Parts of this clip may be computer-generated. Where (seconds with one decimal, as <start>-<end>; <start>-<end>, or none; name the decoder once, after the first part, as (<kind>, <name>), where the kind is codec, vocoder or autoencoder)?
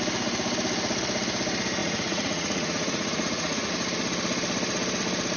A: 1.8-3.7 (vocoder, Vocos)